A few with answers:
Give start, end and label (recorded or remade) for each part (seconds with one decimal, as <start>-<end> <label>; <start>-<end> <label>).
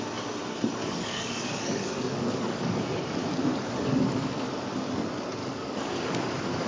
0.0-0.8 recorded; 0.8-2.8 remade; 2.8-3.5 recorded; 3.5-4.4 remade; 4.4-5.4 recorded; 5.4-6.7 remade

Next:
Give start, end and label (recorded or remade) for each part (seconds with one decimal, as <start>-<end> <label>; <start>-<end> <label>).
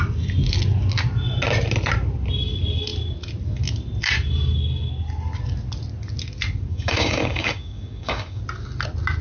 0.0-6.7 recorded; 6.7-8.4 remade; 8.4-9.2 recorded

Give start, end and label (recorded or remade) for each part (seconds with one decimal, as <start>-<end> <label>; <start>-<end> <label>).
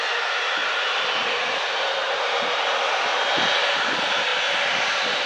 0.0-0.6 recorded; 0.6-3.4 remade; 3.4-4.3 recorded; 4.3-5.3 remade